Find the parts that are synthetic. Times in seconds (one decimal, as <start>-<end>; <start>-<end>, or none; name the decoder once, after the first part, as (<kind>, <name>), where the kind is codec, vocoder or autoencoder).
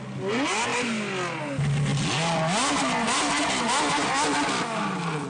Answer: none